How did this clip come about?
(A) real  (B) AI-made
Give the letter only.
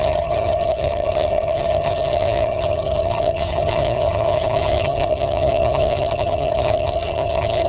B